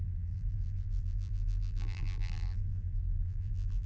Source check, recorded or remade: remade